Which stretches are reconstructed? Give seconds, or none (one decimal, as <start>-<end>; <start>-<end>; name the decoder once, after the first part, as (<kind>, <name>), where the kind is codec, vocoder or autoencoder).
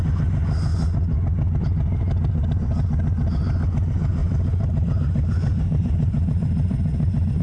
4.2-7.4 (vocoder, BigVGAN v2)